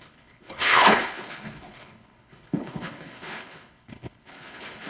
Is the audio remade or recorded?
remade